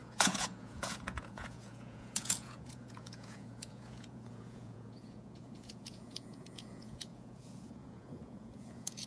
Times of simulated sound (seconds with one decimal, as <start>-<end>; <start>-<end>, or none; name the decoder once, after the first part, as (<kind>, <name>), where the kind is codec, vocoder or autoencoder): 0.0-9.1 (vocoder, Vocos)